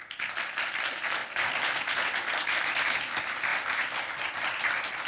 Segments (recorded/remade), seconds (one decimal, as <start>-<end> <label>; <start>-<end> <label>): 0.0-5.1 recorded